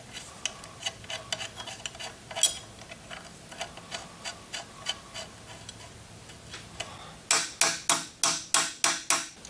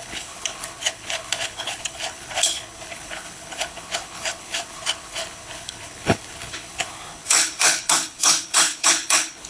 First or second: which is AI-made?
second